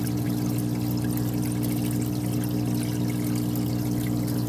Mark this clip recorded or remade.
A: recorded